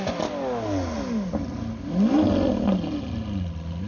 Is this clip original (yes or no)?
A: yes